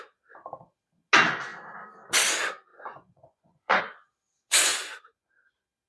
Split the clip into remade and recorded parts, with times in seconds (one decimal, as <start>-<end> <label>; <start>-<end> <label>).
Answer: 0.0-2.7 recorded; 2.7-3.8 remade; 3.8-4.7 recorded; 4.7-5.5 remade; 5.5-5.9 recorded